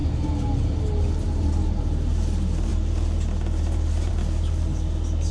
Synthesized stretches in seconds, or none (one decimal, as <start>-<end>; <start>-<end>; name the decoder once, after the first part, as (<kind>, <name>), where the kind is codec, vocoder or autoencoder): none